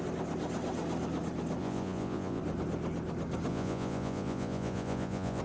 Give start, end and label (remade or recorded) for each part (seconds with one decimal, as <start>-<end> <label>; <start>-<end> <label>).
0.0-1.6 recorded; 1.6-2.4 remade; 2.4-3.5 recorded; 3.5-5.4 remade